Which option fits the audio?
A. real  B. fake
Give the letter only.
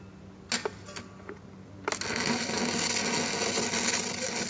A